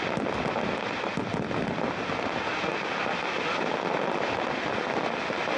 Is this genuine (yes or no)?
yes